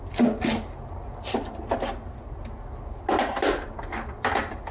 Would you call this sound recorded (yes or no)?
yes